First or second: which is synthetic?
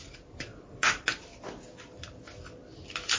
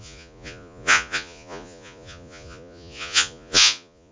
second